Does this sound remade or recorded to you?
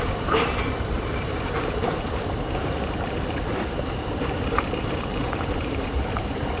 remade